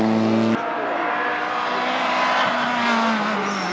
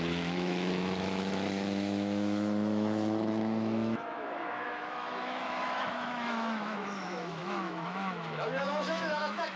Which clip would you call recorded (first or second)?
first